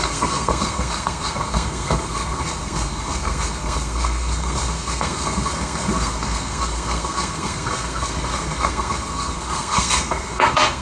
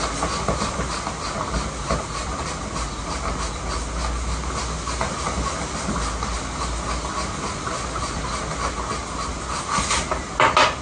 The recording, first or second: second